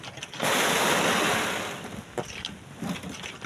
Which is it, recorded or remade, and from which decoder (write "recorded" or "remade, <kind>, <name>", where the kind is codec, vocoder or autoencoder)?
recorded